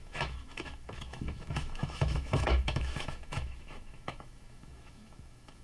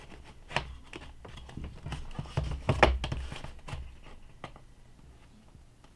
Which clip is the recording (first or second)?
second